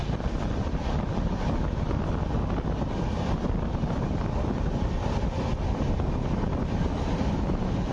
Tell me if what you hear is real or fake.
real